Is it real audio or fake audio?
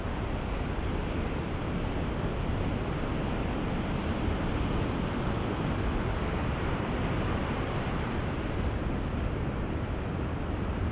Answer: real